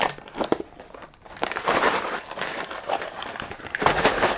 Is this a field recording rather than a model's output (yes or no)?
no